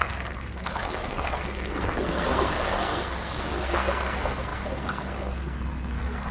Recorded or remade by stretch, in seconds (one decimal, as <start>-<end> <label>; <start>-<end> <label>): 0.0-6.3 remade